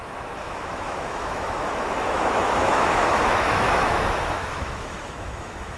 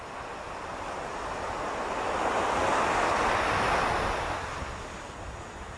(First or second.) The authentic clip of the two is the second